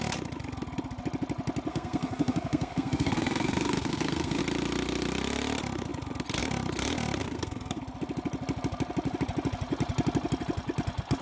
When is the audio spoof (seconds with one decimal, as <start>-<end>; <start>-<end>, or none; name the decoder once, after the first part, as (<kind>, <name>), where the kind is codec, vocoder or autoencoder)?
1.7-4.4 (codec, SNAC); 7.2-7.8